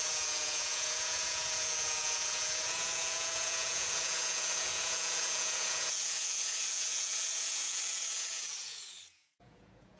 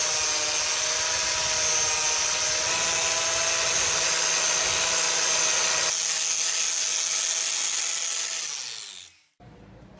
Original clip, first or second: second